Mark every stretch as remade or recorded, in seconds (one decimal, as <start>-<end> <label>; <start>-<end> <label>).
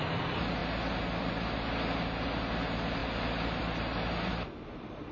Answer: 0.0-5.1 recorded